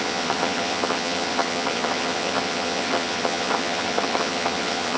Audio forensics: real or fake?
fake